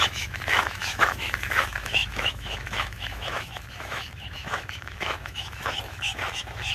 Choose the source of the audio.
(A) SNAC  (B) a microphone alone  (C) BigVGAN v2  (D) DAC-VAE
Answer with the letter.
D